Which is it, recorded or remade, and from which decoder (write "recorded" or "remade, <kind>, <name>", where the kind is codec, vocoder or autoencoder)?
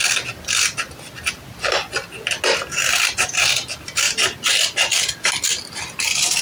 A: recorded